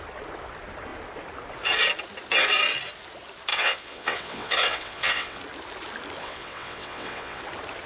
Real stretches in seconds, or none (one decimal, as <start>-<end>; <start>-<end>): 0.0-3.5; 5.4-6.2; 7.4-7.9